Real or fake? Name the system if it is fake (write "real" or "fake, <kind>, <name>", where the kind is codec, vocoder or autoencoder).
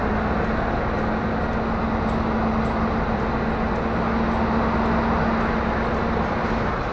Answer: real